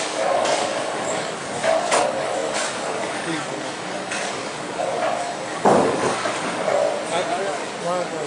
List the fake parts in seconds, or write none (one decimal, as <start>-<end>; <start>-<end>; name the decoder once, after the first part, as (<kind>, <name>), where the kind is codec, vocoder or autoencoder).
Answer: 0.0-6.8 (codec, DAC); 7.8-8.3

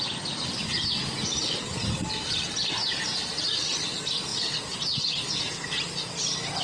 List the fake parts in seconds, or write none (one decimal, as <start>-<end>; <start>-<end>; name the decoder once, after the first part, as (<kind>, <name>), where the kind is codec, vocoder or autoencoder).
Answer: none

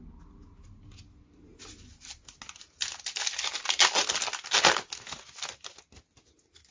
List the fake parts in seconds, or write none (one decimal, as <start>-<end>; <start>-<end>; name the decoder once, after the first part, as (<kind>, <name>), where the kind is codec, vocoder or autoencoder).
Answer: none